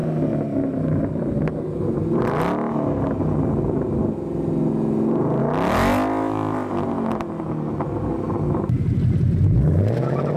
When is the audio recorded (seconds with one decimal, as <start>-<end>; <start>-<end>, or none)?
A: 0.0-10.4